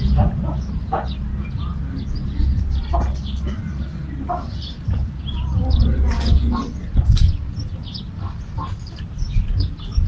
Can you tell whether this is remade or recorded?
recorded